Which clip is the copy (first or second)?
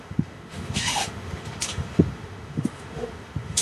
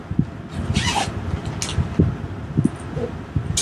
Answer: first